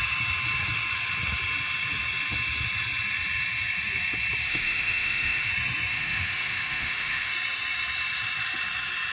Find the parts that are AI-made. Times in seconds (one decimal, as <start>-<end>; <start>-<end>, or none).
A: 4.5-5.5; 5.9-7.3

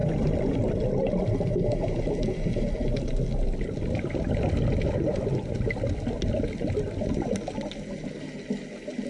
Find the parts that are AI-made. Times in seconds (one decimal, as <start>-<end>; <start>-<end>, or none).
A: none

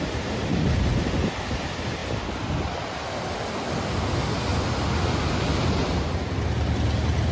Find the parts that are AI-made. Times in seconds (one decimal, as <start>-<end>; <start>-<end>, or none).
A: none

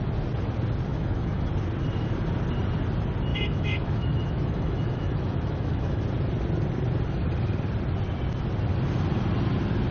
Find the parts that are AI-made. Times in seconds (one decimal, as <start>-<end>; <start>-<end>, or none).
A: 0.9-1.5; 3.3-6.0